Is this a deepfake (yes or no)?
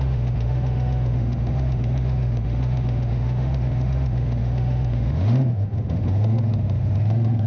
yes